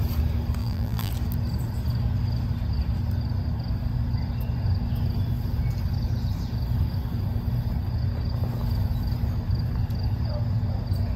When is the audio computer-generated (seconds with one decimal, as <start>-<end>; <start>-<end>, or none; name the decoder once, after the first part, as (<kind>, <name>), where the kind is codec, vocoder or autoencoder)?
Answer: 0.6-1.1 (vocoder, BigVGAN v2)